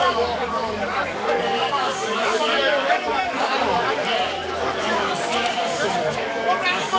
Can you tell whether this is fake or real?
fake